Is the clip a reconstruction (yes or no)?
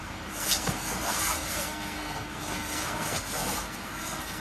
yes